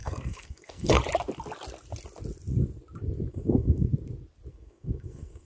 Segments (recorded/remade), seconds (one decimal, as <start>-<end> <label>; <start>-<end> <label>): 0.0-1.0 remade; 1.0-3.3 recorded; 3.3-3.9 remade; 3.9-4.5 recorded; 4.5-5.4 remade